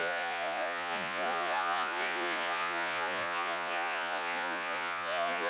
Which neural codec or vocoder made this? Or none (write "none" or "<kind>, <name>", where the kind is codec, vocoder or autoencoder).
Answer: vocoder, Vocos